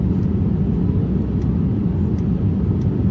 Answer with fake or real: real